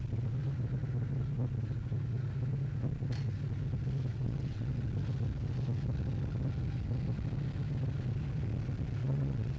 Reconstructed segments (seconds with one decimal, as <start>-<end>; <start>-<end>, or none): 4.1-4.7; 9.0-9.6